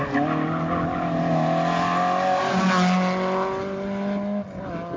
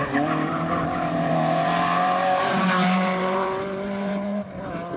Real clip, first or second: first